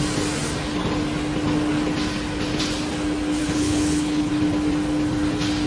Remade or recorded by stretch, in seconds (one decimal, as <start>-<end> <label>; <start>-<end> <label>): 0.0-3.4 recorded; 3.4-4.3 remade; 4.3-5.7 recorded

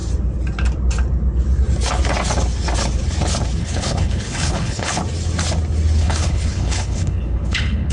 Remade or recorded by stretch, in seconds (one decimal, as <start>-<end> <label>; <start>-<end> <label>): 0.0-3.6 recorded; 3.6-5.0 remade; 5.0-6.0 recorded; 6.0-7.9 remade

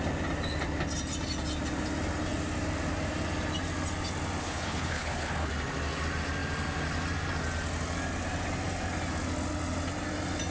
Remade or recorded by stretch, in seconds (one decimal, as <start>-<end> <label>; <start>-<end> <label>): 0.0-4.4 recorded; 4.4-5.5 remade; 5.5-10.5 recorded

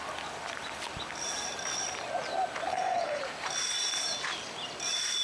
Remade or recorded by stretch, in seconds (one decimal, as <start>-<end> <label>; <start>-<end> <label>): 0.0-2.7 recorded; 2.7-3.2 remade; 3.2-5.2 recorded

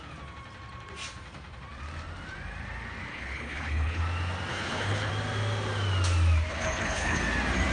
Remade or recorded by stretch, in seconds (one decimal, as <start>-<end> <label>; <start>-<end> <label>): 0.0-3.1 recorded; 3.1-4.0 remade; 4.0-4.5 recorded; 4.5-5.1 remade; 5.1-6.5 recorded; 6.5-7.2 remade; 7.2-7.7 recorded